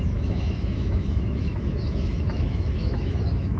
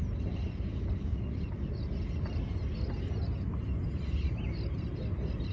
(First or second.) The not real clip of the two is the first